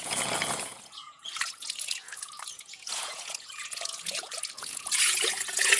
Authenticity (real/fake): fake